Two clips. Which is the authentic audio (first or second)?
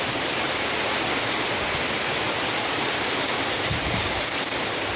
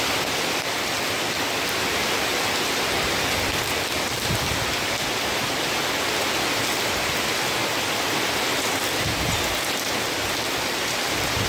second